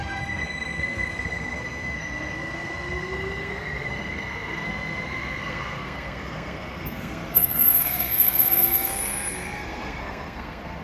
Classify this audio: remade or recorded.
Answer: remade